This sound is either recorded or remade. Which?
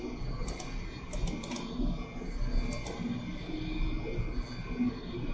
recorded